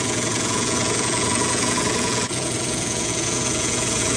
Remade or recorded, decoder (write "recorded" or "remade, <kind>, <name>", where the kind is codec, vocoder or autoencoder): remade, vocoder, Vocos